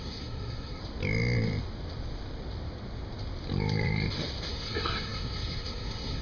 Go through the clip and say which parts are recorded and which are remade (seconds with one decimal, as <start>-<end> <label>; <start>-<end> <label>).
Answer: 0.0-0.8 remade; 0.8-4.5 recorded; 4.5-6.2 remade